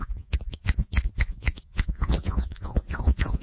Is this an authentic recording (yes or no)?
no